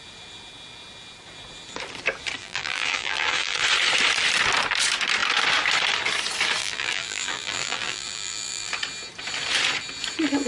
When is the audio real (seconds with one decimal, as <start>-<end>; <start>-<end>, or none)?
0.0-2.4; 3.6-6.6; 8.7-10.5

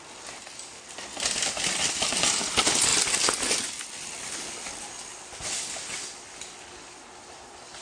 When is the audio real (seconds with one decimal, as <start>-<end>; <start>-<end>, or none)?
0.0-7.8

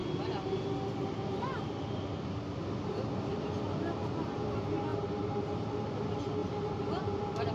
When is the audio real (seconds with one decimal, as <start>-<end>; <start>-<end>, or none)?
0.0-4.9; 5.7-6.4

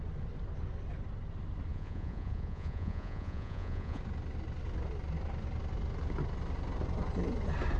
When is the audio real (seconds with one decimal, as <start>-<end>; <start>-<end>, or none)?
0.0-1.7; 4.0-7.8

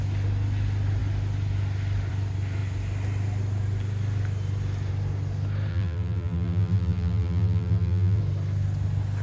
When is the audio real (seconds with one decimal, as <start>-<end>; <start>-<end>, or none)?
0.0-5.7; 8.2-9.2

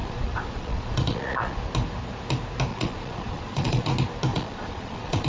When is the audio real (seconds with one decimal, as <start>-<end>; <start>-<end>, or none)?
1.6-2.7; 3.9-4.3